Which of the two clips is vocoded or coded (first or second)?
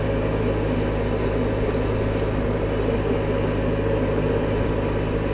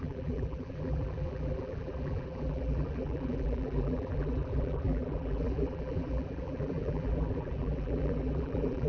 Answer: second